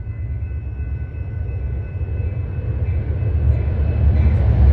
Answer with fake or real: real